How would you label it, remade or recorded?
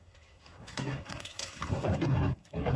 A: remade